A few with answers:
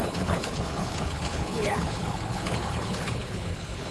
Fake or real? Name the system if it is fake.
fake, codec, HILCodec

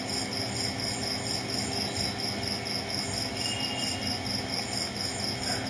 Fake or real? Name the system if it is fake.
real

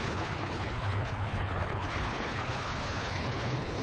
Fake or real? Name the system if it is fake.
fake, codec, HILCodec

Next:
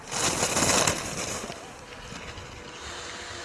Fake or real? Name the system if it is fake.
real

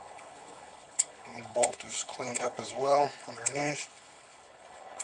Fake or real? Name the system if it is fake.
fake, codec, HILCodec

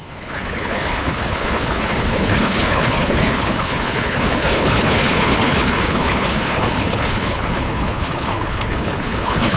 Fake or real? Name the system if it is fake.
fake, codec, HILCodec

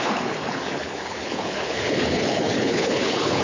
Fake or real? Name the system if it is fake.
fake, codec, HILCodec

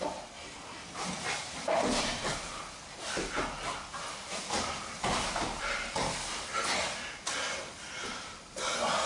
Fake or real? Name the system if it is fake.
real